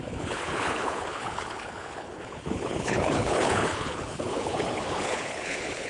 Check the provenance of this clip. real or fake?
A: fake